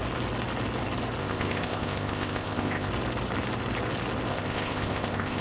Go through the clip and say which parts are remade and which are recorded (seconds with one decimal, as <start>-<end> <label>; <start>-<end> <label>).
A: 0.0-1.2 recorded; 1.2-2.9 remade; 2.9-4.3 recorded; 4.3-5.4 remade